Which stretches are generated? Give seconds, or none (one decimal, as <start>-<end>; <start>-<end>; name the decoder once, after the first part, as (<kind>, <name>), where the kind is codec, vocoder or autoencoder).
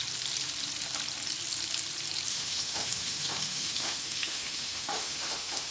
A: 2.3-5.7 (autoencoder, DAC-VAE)